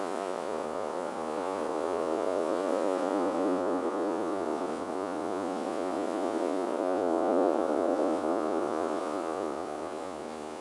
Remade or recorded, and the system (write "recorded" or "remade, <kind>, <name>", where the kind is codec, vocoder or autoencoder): remade, vocoder, Vocos